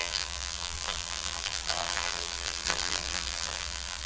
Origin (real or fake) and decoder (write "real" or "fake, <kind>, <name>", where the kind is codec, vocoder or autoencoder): fake, vocoder, BigVGAN v2